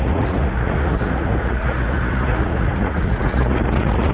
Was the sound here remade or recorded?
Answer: remade